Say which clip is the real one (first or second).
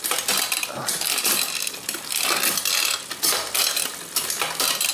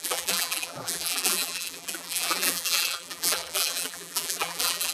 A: first